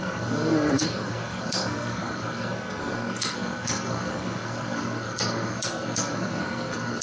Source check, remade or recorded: remade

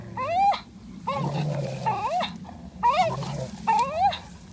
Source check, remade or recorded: recorded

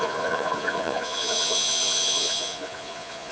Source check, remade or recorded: remade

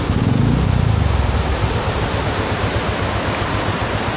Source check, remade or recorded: recorded